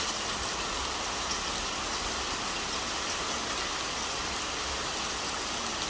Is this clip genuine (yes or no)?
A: yes